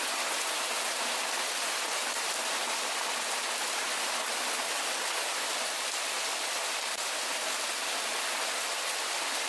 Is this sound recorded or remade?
recorded